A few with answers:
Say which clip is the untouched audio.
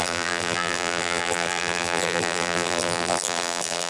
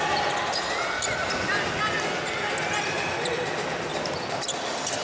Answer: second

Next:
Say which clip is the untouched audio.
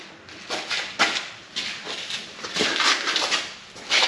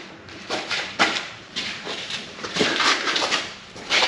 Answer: first